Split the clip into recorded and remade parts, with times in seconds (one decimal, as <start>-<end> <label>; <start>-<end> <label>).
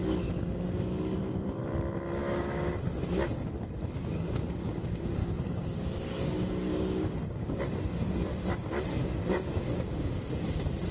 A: 0.0-2.2 recorded; 2.2-2.7 remade; 2.7-5.2 recorded; 5.2-7.6 remade; 7.6-9.0 recorded; 9.0-10.0 remade; 10.0-10.9 recorded